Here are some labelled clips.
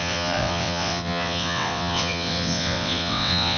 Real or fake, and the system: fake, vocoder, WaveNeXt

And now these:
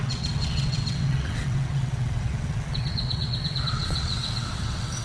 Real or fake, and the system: fake, vocoder, WaveNeXt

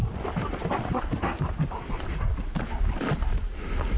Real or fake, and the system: real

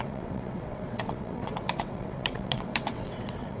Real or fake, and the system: fake, vocoder, WaveNeXt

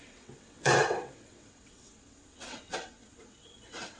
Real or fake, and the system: fake, vocoder, WaveNeXt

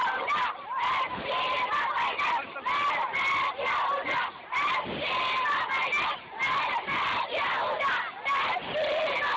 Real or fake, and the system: real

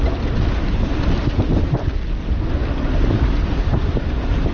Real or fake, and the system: real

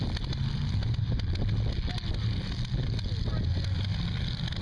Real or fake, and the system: real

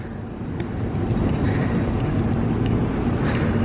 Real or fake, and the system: real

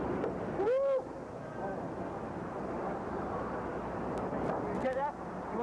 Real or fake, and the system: real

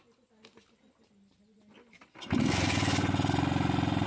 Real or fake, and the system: real